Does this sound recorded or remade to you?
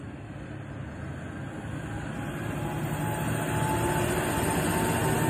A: recorded